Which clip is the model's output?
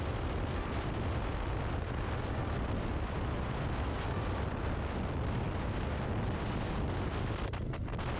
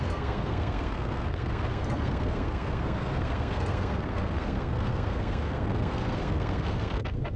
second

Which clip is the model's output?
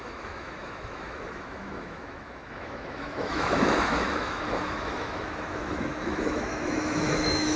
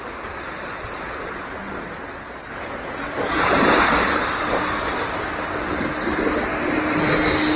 first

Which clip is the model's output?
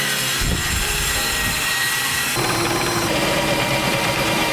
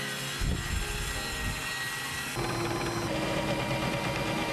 first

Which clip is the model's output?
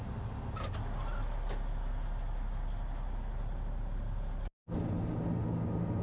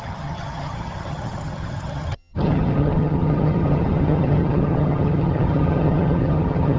second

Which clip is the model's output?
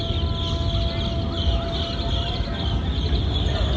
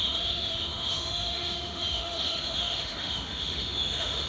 second